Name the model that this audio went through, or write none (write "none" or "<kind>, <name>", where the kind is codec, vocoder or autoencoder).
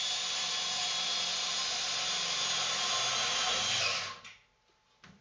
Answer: none